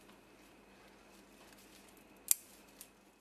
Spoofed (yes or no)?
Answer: no